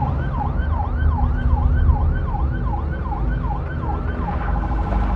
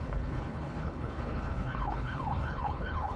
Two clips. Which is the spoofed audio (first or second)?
second